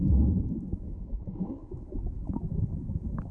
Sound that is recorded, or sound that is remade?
remade